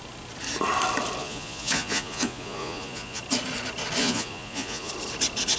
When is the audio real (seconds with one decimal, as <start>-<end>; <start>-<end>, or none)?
0.0-1.2; 3.2-4.0; 4.9-5.6

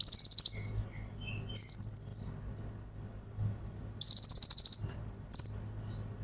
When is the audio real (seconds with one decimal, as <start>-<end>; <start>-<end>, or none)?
0.0-6.2

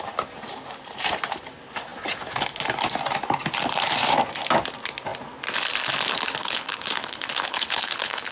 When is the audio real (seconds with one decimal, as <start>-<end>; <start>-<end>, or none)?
0.0-6.4

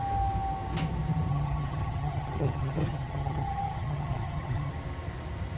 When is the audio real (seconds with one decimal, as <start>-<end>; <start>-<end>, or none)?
0.0-1.3; 4.7-5.6